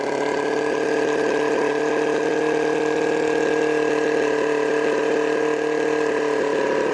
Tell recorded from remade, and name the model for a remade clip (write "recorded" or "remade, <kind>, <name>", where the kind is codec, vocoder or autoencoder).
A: recorded